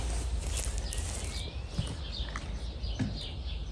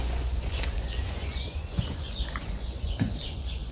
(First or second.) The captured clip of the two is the first